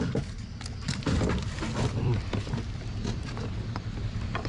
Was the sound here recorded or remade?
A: remade